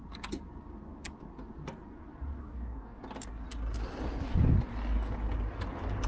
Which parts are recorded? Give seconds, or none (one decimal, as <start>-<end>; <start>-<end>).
0.0-2.4; 3.0-6.1